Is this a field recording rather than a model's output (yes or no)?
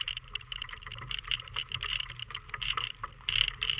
no